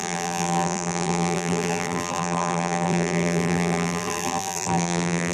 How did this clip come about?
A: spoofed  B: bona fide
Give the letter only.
A